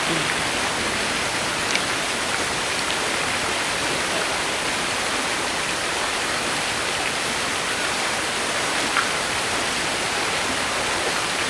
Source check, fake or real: fake